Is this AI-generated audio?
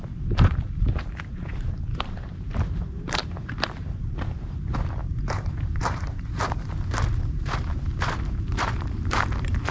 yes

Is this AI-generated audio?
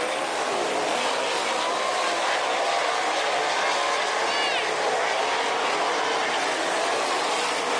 no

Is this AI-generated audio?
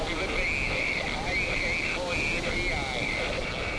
no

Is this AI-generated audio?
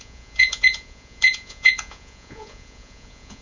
yes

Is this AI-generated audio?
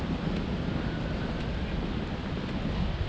no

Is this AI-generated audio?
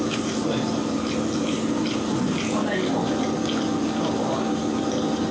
no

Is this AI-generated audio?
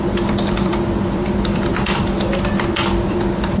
yes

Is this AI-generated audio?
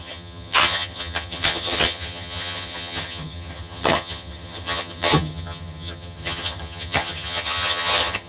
yes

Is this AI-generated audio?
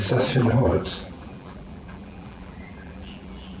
yes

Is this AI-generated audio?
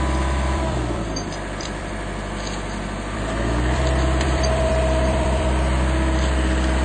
yes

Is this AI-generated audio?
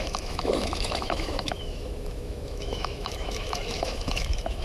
yes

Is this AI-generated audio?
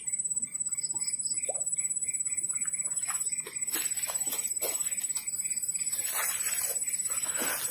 no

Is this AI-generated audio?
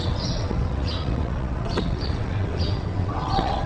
yes